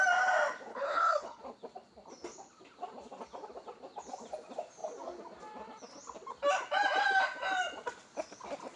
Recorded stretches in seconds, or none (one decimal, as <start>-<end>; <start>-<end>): 0.0-0.7; 1.4-8.8